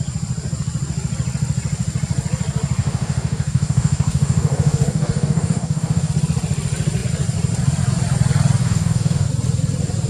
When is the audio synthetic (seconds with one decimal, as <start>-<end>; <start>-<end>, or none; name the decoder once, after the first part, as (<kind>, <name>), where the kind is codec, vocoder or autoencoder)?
2.8-6.1 (codec, DAC); 8.6-9.3

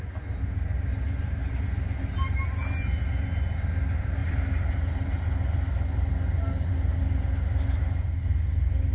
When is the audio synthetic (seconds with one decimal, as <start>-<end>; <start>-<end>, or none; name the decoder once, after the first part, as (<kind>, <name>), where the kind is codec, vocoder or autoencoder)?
none

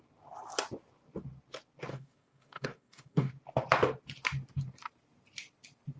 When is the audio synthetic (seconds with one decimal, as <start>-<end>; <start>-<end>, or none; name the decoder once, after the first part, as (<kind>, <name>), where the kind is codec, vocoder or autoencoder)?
1.9-3.3 (codec, DAC)

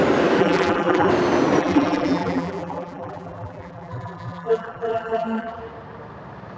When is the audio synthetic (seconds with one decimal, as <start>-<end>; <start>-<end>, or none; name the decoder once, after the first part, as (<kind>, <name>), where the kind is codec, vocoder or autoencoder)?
0.4-1.1 (vocoder, BigVGAN v2); 1.6-5.6

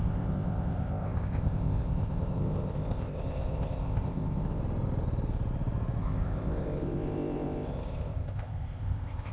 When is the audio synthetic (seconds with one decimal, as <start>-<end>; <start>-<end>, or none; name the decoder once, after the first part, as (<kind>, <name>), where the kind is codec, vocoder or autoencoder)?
0.0-4.6 (codec, ZipCodec); 6.0-9.3

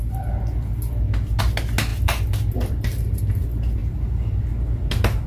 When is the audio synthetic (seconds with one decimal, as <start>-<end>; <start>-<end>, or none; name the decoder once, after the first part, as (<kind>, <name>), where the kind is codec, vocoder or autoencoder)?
1.9-3.2 (vocoder, BigVGAN v2); 3.8-4.3